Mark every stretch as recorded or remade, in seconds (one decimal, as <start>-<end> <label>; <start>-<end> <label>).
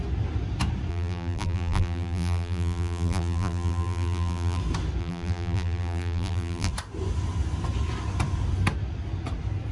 0.0-0.9 recorded; 0.9-4.6 remade; 4.6-5.0 recorded; 5.0-6.7 remade; 6.7-9.7 recorded